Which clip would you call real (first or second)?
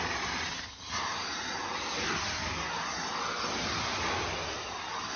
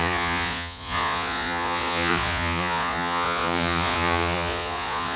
first